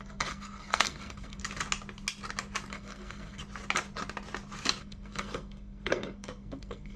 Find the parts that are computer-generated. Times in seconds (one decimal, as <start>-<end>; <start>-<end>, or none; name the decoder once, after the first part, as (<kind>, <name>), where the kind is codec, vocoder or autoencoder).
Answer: 0.0-1.4 (codec, SNAC); 2.7-3.4; 4.8-7.0